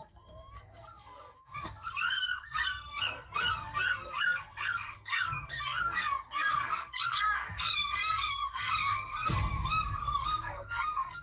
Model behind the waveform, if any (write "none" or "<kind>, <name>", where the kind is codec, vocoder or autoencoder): codec, SNAC